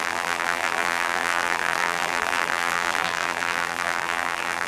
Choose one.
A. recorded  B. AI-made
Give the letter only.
B